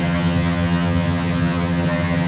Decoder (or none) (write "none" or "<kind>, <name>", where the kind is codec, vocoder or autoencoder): vocoder, HiFi-GAN